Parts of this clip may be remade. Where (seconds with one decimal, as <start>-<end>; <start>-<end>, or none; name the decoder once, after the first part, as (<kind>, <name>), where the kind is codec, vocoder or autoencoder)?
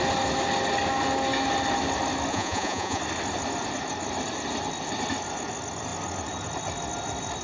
2.3-3.0 (vocoder, Vocos)